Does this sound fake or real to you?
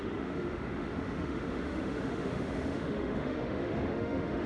fake